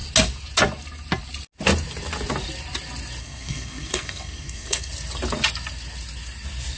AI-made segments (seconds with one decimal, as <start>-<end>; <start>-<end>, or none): 3.2-4.9